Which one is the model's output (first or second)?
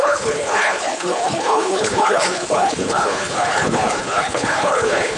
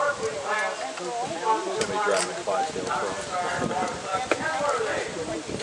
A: first